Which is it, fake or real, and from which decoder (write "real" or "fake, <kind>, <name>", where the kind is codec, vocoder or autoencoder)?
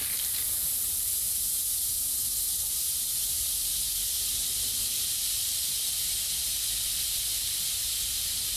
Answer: real